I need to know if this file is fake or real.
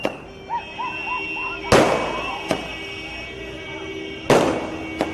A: real